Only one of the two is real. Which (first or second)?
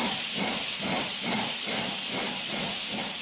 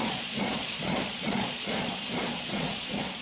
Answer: first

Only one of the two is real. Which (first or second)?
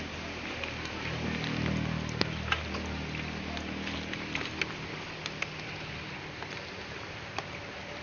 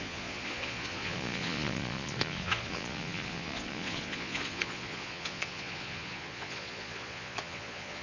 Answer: first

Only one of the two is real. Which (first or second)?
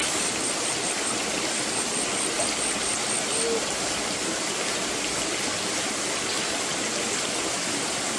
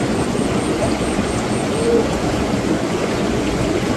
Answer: first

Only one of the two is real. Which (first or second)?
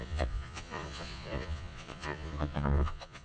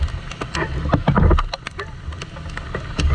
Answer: second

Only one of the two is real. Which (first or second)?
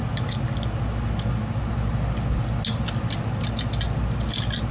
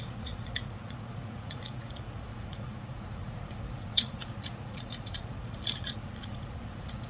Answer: first